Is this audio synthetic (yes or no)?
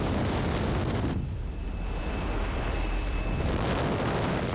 no